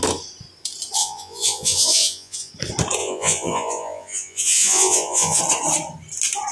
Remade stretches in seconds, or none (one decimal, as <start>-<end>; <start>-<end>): 1.0-2.5; 3.0-5.4